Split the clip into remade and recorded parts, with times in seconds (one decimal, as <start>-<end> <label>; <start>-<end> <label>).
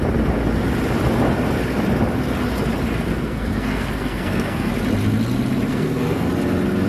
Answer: 0.0-3.1 recorded; 3.1-4.7 remade; 4.7-5.7 recorded; 5.7-6.3 remade; 6.3-6.9 recorded